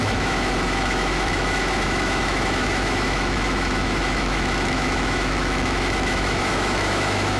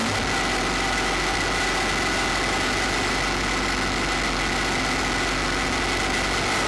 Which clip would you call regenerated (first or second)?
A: first